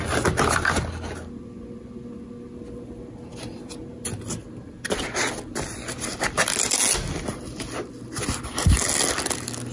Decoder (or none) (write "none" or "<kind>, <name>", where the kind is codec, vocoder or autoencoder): none